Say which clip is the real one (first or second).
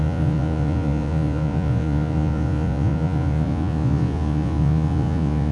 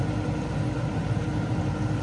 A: second